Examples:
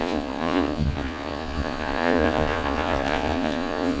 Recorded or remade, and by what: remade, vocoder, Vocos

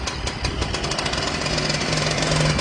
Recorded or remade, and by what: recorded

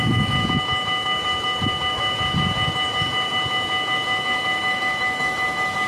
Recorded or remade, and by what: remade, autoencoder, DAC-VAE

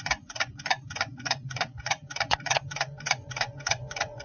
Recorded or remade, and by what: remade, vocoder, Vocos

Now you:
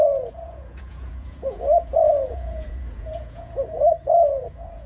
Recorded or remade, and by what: remade, vocoder, Vocos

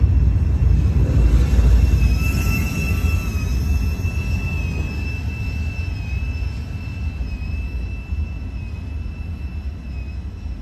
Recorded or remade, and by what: recorded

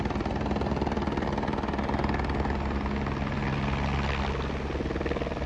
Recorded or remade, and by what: recorded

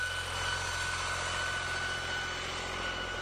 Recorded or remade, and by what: recorded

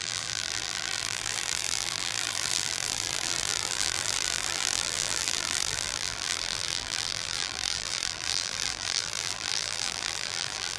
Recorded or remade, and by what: remade, vocoder, BigVGAN v2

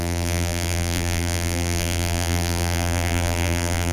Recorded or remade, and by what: remade, vocoder, BigVGAN v2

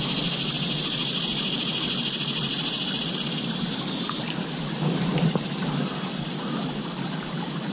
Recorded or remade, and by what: recorded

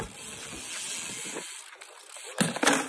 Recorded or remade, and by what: recorded